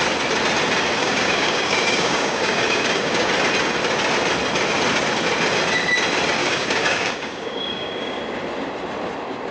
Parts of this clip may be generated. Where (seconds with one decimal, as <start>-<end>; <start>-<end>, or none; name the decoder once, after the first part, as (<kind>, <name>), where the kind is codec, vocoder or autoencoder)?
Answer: 1.0-3.3 (codec, DAC); 6.4-8.2